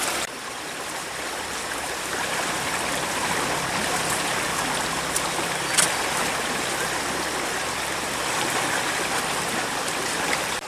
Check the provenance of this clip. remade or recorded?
remade